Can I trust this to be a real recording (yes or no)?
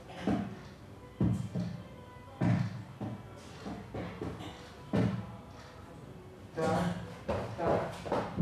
yes